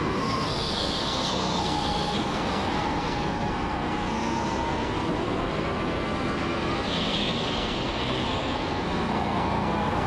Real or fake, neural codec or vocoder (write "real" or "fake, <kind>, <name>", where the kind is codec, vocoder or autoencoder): fake, codec, SNAC